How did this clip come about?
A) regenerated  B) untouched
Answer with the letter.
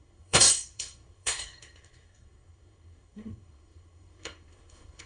A